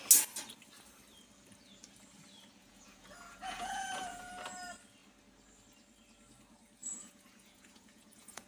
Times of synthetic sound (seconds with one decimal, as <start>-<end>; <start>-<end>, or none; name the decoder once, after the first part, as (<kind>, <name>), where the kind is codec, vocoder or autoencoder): 2.6-4.3 (vocoder, Vocos); 6.8-8.5